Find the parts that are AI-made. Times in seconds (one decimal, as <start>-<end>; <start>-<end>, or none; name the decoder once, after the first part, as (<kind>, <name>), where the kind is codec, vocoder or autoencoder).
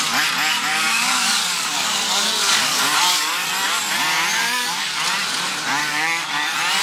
0.7-3.5 (codec, DAC); 4.4-5.0; 5.8-6.3